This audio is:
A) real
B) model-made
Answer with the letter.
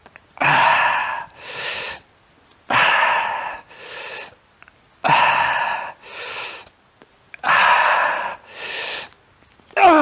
A